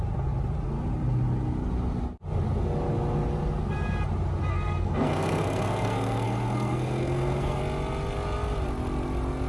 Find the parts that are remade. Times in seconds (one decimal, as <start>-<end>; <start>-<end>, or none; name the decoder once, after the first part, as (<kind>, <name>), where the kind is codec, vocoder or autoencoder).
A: 4.5-7.6 (codec, SNAC)